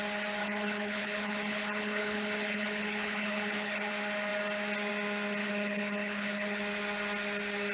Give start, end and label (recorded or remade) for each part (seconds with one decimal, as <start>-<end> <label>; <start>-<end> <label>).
0.0-0.4 recorded; 0.4-3.9 remade; 3.9-5.4 recorded; 5.4-6.6 remade; 6.6-7.7 recorded